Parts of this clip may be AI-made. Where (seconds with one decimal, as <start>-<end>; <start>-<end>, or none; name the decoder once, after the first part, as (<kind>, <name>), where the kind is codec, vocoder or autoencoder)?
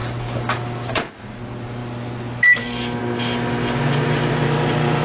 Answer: 0.0-1.8 (vocoder, BigVGAN v2); 2.6-3.0; 4.3-5.0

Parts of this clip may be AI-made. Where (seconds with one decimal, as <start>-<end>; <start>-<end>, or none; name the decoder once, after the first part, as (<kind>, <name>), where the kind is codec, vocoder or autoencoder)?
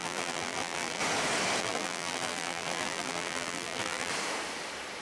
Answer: 0.0-1.0 (vocoder, BigVGAN v2); 1.6-4.1